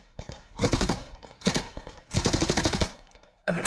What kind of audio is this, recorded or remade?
remade